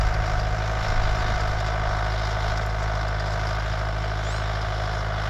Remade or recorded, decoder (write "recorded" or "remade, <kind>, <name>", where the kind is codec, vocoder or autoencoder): recorded